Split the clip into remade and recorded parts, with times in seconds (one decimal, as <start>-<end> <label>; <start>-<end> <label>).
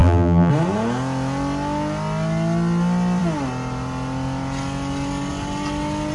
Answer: 0.0-0.5 remade; 0.5-6.1 recorded